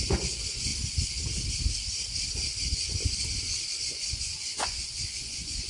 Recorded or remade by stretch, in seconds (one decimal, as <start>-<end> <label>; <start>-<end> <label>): 0.0-0.7 remade; 0.7-3.8 recorded; 3.8-5.7 remade